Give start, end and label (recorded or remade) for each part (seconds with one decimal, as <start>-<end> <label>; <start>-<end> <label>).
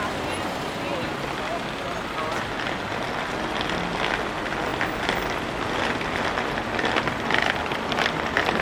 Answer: 0.0-8.6 recorded